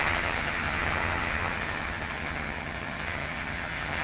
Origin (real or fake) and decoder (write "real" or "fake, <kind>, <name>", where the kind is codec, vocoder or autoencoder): fake, vocoder, HiFi-GAN